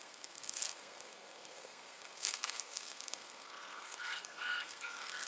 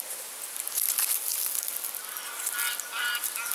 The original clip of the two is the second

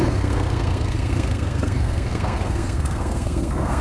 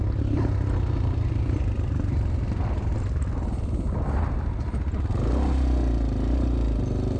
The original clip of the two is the second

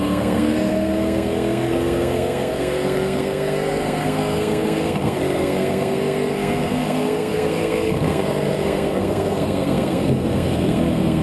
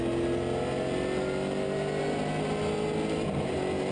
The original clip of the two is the second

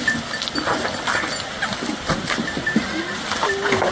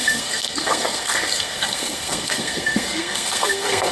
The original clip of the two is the first